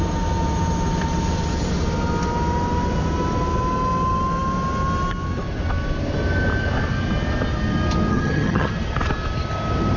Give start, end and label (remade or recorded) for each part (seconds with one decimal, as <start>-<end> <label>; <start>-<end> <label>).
0.0-8.1 recorded; 8.1-8.7 remade; 8.7-10.0 recorded